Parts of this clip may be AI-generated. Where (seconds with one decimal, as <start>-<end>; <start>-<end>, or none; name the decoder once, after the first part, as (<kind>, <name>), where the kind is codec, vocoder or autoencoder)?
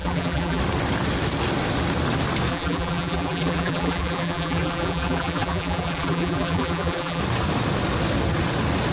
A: 0.0-0.6 (vocoder, BigVGAN v2); 2.5-7.2